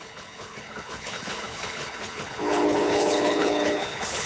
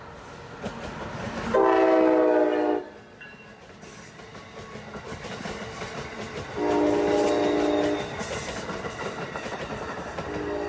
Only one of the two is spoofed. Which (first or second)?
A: first